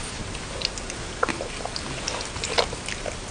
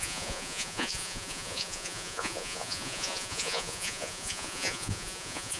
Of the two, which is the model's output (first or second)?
second